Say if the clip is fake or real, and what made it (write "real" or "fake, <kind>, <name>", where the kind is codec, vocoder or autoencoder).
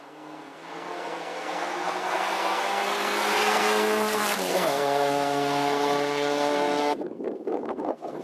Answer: fake, codec, SNAC